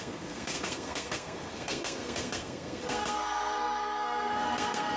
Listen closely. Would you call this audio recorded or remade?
remade